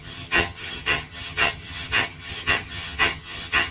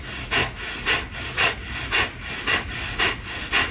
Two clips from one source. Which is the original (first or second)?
second